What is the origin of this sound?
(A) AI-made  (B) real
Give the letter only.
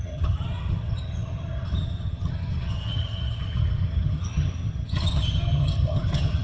A